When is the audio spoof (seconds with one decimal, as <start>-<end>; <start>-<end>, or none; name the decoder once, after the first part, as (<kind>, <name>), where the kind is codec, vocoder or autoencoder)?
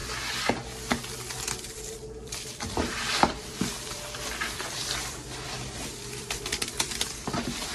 1.9-7.7 (vocoder, BigVGAN v2)